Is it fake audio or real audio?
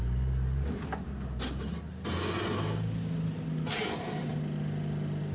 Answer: real